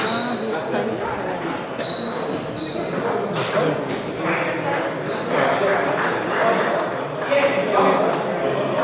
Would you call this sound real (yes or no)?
yes